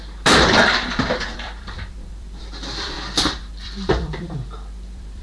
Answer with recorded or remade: remade